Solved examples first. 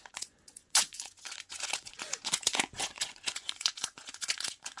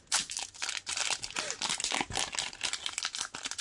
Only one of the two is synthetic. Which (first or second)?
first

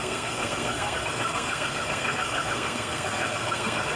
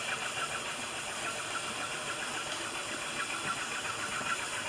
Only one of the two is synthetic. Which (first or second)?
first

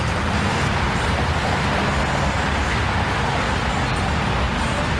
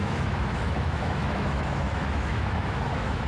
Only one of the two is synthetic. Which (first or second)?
second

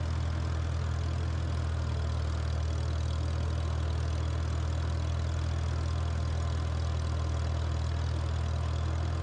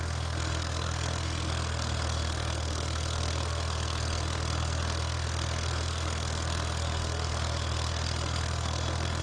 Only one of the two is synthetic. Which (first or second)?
second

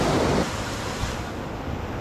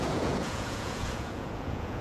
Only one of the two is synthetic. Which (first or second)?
second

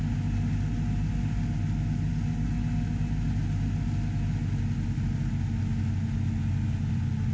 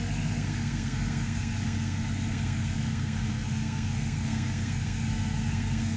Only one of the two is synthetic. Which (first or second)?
second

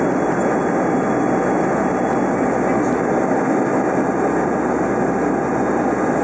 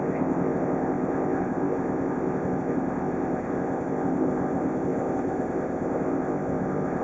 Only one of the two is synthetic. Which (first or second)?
second